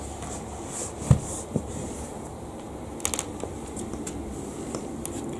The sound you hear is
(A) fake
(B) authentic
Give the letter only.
B